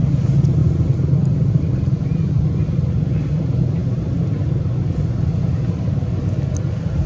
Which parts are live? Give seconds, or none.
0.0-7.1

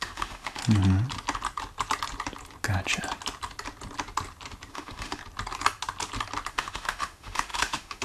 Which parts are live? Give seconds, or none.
0.6-4.7; 5.2-6.5

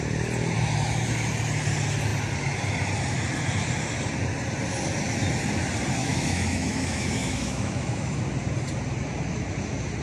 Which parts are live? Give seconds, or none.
0.0-6.0; 8.2-10.0